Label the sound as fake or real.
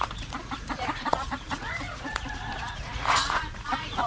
fake